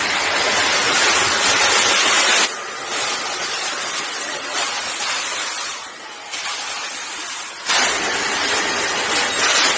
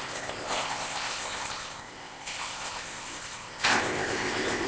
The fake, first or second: second